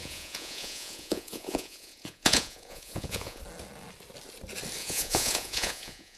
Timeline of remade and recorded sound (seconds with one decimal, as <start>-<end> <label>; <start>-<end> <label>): 0.0-3.4 remade; 3.4-4.8 recorded; 4.8-6.2 remade